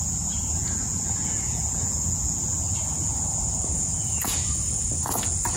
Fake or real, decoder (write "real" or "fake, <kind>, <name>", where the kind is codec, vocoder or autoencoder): fake, vocoder, Vocos